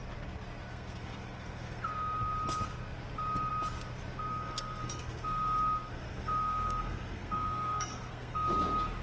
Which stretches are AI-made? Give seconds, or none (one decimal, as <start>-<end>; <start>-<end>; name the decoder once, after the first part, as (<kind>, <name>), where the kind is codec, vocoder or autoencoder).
0.7-1.8 (codec, SNAC); 4.3-8.5